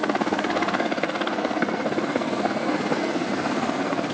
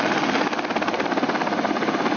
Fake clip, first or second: first